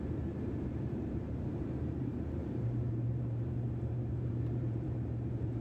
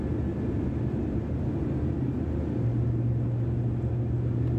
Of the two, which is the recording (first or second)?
second